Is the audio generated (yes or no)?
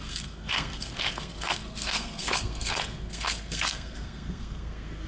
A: yes